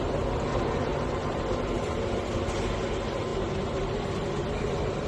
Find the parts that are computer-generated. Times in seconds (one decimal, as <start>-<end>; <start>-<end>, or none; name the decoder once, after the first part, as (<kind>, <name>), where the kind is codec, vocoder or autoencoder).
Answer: none